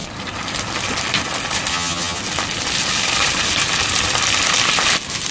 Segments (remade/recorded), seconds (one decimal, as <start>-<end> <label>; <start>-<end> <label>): 0.0-1.7 recorded; 1.7-2.2 remade; 2.2-5.3 recorded